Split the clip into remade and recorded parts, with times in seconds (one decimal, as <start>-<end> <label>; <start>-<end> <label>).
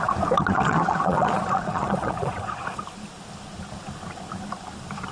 0.0-0.4 recorded; 0.4-2.8 remade; 2.8-5.1 recorded